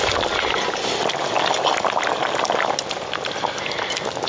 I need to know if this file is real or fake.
real